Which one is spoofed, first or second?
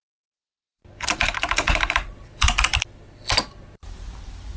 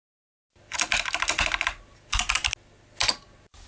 first